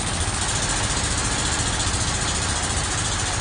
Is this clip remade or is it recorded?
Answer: recorded